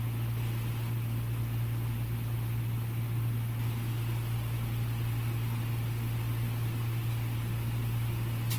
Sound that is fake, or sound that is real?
real